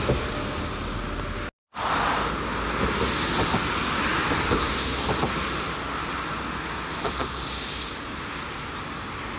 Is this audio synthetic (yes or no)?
no